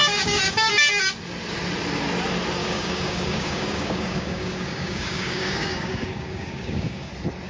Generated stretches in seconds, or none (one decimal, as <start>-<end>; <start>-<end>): 0.0-0.7; 2.6-7.1